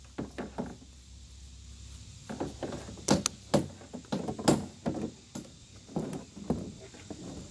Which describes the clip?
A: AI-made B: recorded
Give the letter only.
B